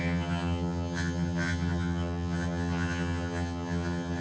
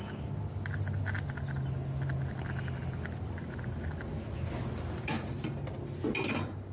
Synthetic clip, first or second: first